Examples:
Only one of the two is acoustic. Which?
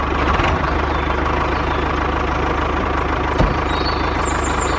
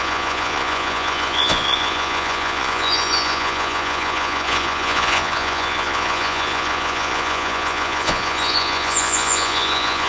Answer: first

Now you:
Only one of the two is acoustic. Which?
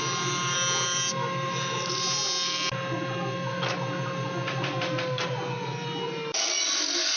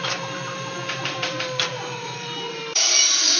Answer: first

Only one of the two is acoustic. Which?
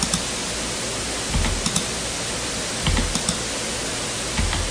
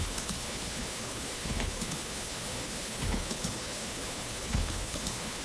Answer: first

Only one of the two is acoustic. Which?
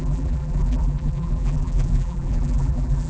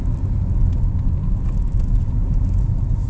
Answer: second